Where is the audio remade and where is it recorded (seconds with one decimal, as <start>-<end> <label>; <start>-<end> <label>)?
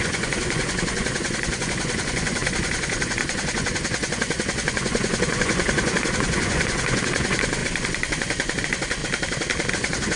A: 0.0-9.0 remade; 9.0-9.7 recorded; 9.7-10.2 remade